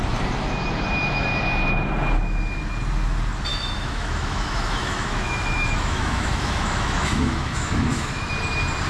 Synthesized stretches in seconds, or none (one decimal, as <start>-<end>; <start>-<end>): 3.5-8.3